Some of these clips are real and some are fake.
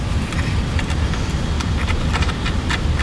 real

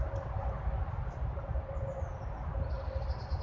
real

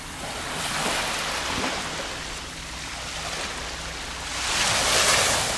real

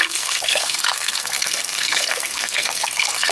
fake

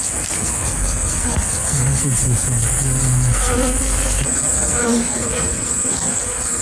fake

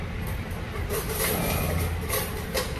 real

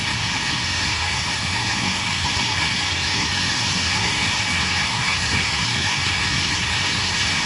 fake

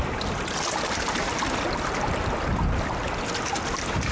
real